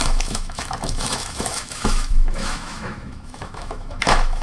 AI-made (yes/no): yes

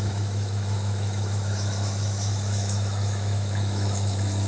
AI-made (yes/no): yes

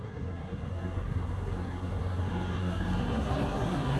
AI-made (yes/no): yes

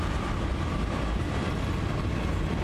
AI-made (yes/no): no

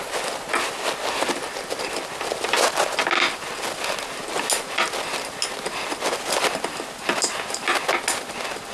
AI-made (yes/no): no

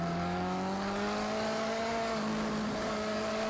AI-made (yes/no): yes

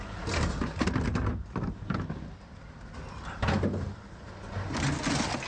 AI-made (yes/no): no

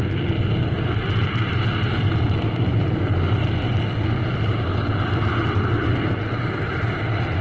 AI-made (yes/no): no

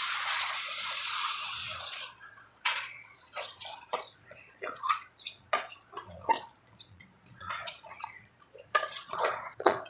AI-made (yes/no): yes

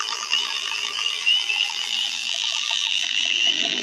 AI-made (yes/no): yes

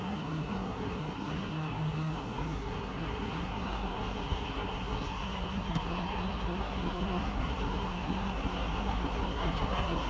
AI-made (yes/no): yes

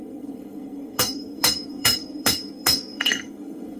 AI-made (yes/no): yes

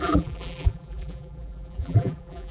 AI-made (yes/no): yes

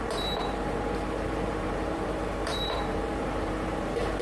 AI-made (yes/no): yes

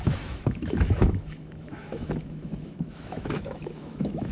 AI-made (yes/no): yes